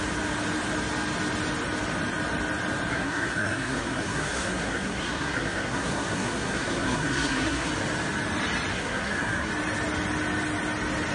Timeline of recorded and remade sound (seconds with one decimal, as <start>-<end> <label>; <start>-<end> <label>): 0.0-2.9 recorded; 2.9-7.7 remade; 7.7-8.7 recorded; 8.7-9.5 remade; 9.5-11.1 recorded